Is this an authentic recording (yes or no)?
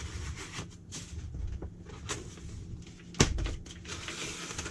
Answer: yes